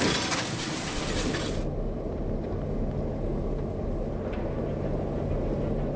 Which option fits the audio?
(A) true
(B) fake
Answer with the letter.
A